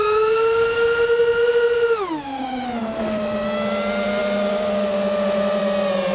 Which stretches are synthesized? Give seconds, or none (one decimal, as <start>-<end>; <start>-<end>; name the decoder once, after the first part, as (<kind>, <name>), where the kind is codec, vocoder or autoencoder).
none